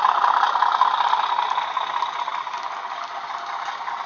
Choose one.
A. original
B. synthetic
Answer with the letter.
A